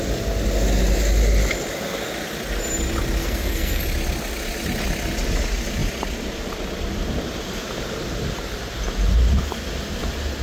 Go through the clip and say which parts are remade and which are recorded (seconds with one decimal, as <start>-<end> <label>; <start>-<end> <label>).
0.0-3.2 recorded; 3.2-3.8 remade; 3.8-10.4 recorded